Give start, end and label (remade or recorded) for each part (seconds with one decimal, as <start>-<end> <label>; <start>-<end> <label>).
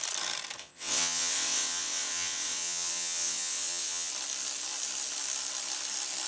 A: 0.0-0.6 recorded; 0.6-4.1 remade; 4.1-6.3 recorded